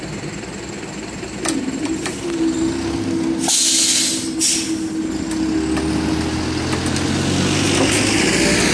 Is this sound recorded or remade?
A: recorded